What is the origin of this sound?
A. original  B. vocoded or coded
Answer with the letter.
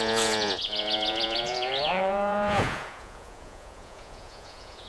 B